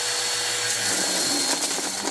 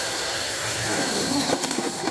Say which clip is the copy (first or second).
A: second